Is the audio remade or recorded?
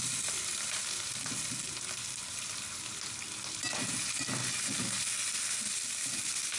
recorded